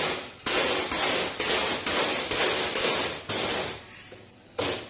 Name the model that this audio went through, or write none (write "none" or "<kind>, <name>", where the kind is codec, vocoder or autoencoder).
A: none